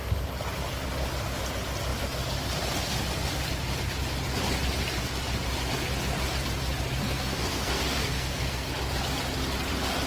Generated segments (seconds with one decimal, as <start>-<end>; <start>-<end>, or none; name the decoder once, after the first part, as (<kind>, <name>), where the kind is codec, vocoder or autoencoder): 7.0-8.7 (codec, SNAC)